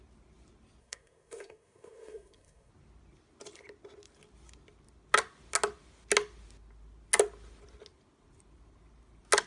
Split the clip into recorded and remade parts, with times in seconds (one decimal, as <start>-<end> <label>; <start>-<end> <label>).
0.0-0.8 recorded; 0.8-2.7 remade; 2.7-9.5 recorded

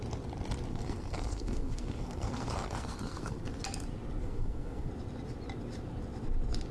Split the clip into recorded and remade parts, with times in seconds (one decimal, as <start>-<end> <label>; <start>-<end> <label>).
0.0-0.7 recorded; 0.7-3.4 remade; 3.4-4.2 recorded; 4.2-4.9 remade; 4.9-6.7 recorded

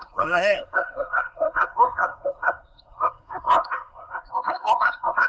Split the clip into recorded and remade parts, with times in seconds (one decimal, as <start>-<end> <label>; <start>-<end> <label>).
0.0-5.3 remade

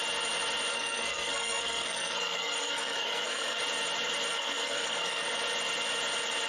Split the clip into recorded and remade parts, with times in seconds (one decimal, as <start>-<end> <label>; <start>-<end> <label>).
0.0-0.7 recorded; 0.7-3.6 remade; 3.6-4.3 recorded; 4.3-5.3 remade; 5.3-6.5 recorded